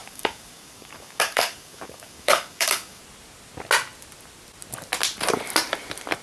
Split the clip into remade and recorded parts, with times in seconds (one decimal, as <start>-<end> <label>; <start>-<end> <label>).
0.0-3.0 remade; 3.0-6.2 recorded